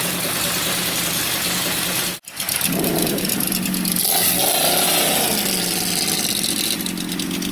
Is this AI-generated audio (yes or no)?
no